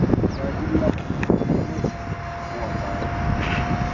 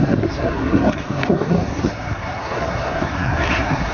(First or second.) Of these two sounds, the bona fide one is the first